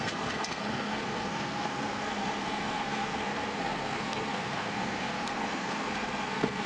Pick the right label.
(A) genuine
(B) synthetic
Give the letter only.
B